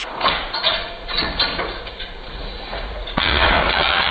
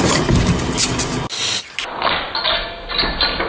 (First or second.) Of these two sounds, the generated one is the first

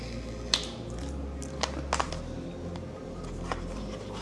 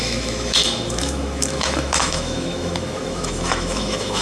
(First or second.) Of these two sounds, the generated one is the second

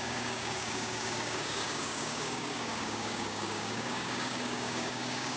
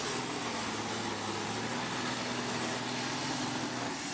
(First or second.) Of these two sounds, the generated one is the first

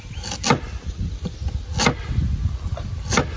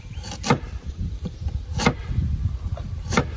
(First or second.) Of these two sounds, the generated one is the second